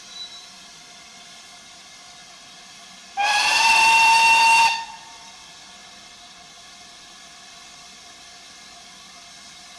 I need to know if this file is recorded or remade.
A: remade